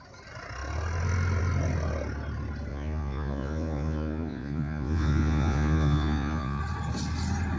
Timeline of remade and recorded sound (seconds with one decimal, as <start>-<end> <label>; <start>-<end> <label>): 0.0-2.7 recorded; 2.7-6.6 remade; 6.6-7.6 recorded